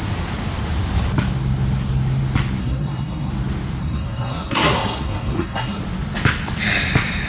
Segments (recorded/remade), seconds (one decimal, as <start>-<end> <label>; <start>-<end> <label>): 0.0-2.6 recorded; 2.6-3.3 remade; 3.3-3.8 recorded; 3.8-5.8 remade; 5.8-7.3 recorded